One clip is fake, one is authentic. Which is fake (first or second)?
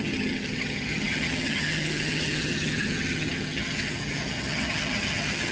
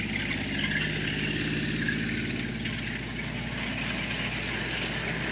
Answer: first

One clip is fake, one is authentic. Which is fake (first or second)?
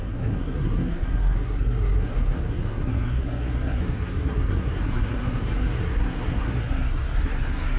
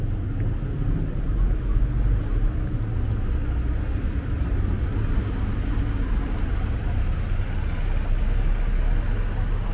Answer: first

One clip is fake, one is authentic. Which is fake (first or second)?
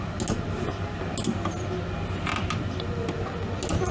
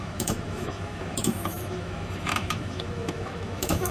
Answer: second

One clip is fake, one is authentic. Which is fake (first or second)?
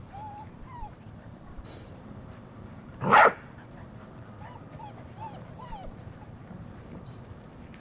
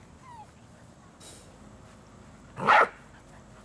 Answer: first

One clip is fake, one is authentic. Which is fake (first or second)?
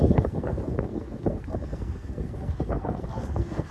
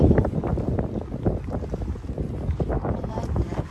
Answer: first